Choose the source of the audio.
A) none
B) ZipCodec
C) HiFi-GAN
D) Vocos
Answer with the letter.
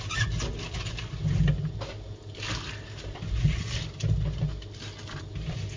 A